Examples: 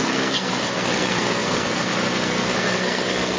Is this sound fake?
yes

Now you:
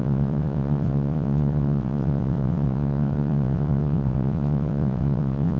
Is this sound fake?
yes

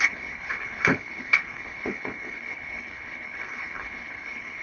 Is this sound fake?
yes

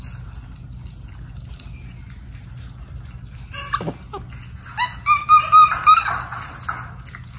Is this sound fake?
no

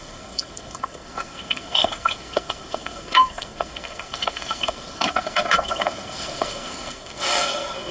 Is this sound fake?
yes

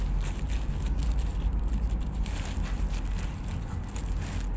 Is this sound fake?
no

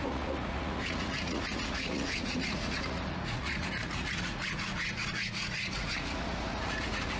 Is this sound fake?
yes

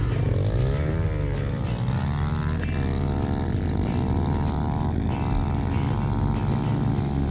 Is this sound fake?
no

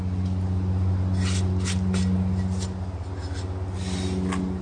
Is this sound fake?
no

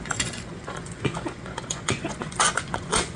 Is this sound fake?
yes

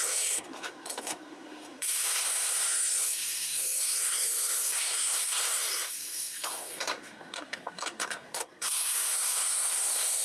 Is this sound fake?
yes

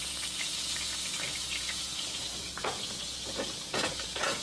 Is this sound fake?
yes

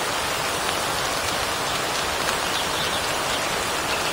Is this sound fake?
no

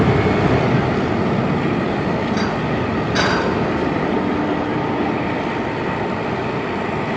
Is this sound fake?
no